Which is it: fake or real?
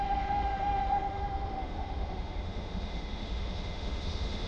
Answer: fake